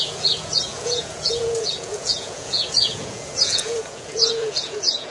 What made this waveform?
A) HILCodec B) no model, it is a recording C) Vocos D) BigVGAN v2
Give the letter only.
C